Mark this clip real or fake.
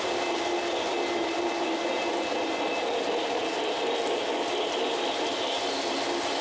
real